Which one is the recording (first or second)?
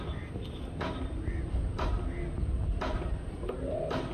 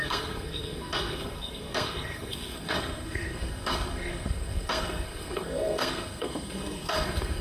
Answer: first